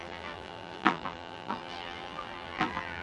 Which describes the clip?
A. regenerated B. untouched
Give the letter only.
A